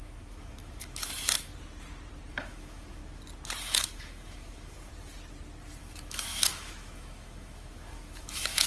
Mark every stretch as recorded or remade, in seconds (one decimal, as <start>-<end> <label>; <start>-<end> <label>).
0.0-1.5 remade; 1.5-2.3 recorded; 2.3-3.0 remade; 3.0-3.6 recorded; 3.6-4.9 remade; 4.9-5.8 recorded; 5.8-8.7 remade